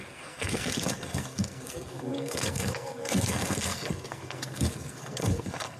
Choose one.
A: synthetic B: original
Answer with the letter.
A